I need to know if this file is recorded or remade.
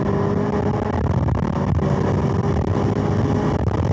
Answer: recorded